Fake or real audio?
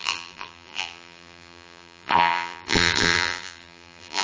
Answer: fake